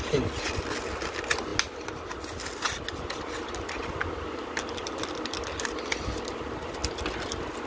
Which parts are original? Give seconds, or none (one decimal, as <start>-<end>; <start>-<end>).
0.0-7.7